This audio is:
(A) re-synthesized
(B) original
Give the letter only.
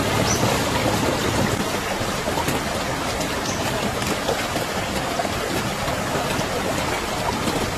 B